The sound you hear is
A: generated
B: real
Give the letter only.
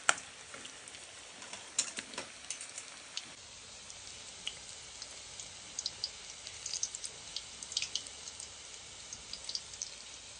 B